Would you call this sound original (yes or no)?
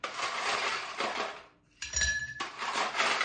no